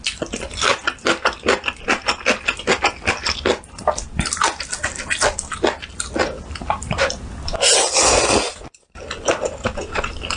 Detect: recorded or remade recorded